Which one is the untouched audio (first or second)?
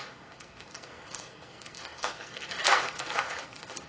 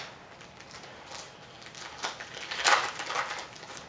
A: second